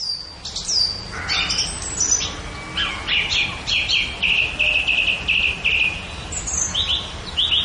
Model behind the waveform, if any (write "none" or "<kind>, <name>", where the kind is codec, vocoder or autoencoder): none